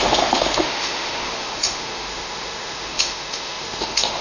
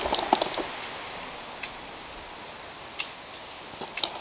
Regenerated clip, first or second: first